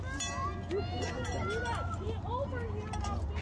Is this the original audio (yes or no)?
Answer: yes